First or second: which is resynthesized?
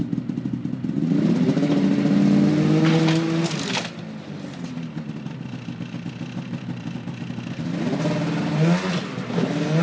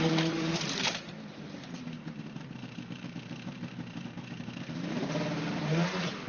second